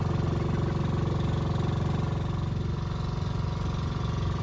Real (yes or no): yes